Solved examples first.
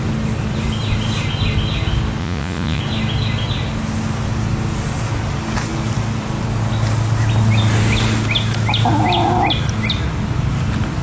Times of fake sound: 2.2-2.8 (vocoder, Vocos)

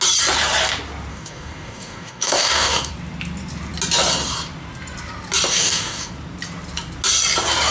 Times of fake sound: 1.1-2.9 (codec, DAC); 5.5-6.1

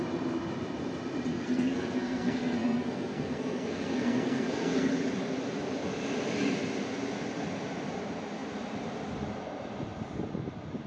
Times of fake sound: 1.3-4.9 (codec, SNAC)